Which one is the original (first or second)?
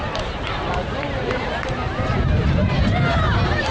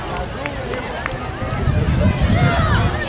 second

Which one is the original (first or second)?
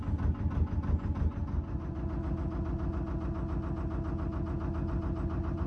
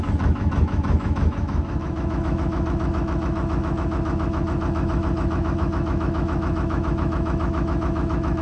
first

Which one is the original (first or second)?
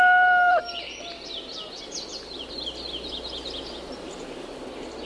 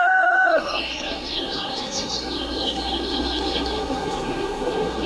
first